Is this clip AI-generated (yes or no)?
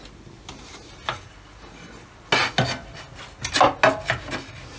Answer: no